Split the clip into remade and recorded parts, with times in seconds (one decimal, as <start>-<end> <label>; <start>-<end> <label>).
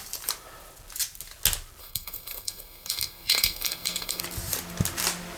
0.0-1.8 recorded; 1.8-4.2 remade; 4.2-5.4 recorded